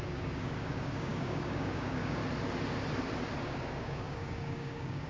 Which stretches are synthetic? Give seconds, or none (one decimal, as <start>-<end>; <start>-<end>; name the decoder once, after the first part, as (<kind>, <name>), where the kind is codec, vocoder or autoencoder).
0.0-2.2 (codec, DAC); 3.4-5.1